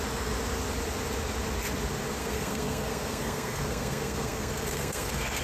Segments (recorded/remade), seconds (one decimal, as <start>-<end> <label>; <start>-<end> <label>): 0.0-2.2 recorded; 2.2-5.4 remade

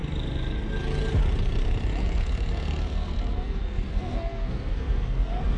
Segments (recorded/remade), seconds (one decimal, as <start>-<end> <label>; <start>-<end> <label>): 0.0-2.0 recorded; 2.0-5.6 remade

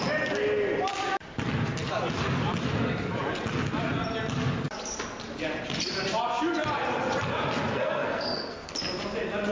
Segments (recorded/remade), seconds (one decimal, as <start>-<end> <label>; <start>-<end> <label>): 0.0-7.7 recorded; 7.7-8.7 remade; 8.7-9.5 recorded

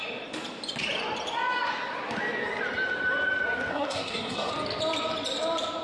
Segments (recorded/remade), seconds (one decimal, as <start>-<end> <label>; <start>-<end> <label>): 0.0-3.7 recorded; 3.7-4.5 remade; 4.5-5.8 recorded

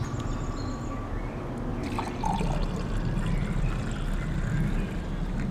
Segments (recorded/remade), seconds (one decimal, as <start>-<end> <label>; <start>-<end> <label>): 0.0-5.5 recorded